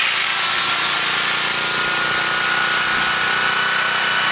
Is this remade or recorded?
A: recorded